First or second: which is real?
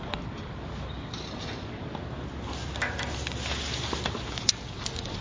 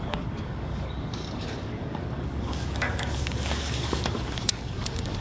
first